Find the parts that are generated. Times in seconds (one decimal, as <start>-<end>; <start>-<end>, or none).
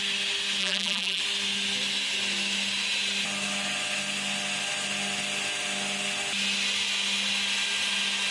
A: 0.6-1.2